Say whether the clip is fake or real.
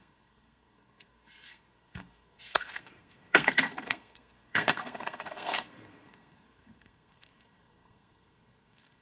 fake